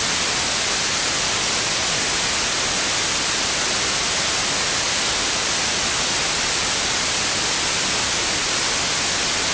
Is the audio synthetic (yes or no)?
no